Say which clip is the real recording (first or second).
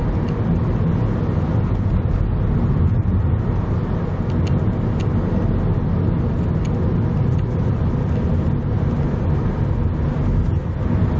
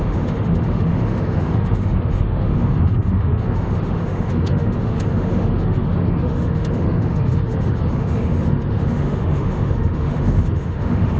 first